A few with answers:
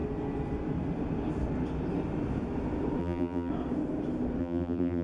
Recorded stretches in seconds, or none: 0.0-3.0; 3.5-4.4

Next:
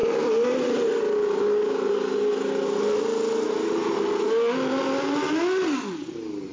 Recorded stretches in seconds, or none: 0.0-6.5

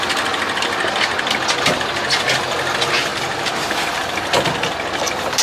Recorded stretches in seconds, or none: 0.0-3.1; 4.0-5.4

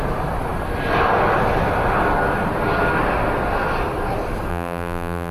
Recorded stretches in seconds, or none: 0.0-4.5

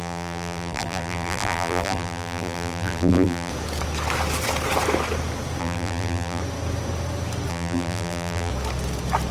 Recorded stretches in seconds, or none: 3.5-5.6; 6.4-7.5; 8.5-9.3

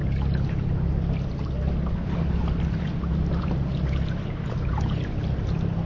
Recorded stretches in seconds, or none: 0.0-2.4

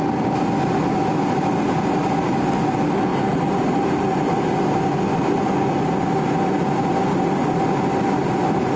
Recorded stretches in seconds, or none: 0.0-8.8